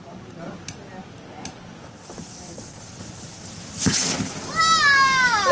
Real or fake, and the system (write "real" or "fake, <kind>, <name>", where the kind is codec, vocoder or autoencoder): real